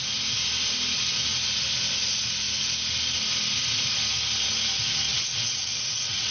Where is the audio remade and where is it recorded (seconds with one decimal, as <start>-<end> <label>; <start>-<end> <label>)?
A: 0.0-5.1 recorded; 5.1-6.3 remade